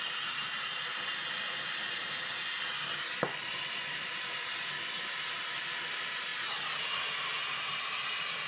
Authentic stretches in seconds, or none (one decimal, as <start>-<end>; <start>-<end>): 0.0-8.5